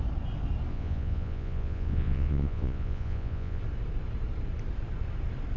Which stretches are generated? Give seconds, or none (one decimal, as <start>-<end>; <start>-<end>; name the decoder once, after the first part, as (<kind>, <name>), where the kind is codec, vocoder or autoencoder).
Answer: 0.7-3.6 (vocoder, Vocos)